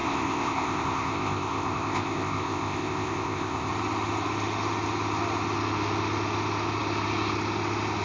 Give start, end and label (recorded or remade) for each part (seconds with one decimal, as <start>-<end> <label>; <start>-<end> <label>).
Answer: 0.0-3.7 remade; 3.7-8.0 recorded